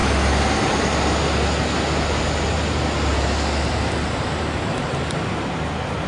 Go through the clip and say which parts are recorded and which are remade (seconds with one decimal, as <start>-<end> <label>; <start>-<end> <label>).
0.0-6.1 recorded